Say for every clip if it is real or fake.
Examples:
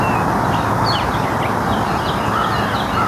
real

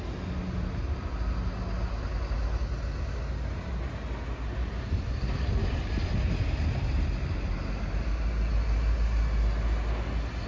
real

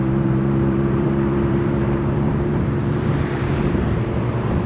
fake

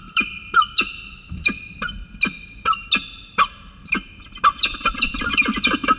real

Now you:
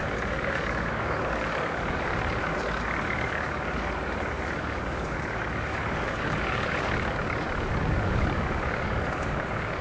fake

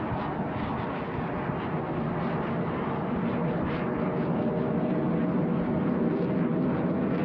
real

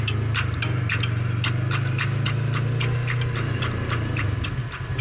real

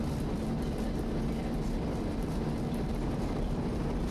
fake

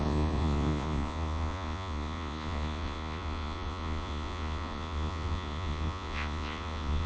fake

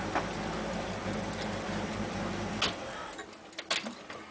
real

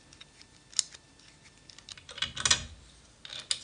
real